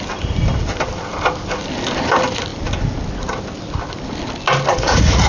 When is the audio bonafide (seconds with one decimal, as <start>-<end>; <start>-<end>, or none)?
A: 0.0-4.7